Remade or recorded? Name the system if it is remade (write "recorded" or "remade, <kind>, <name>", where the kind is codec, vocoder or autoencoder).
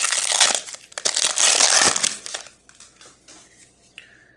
recorded